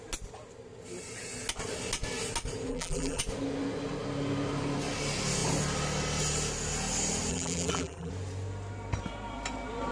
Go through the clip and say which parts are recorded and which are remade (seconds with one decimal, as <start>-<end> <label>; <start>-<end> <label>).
0.0-2.7 recorded; 2.7-3.2 remade; 3.2-7.3 recorded; 7.3-8.1 remade; 8.1-9.9 recorded